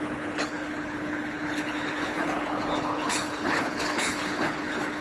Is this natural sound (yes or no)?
no